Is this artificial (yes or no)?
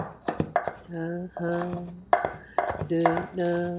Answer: no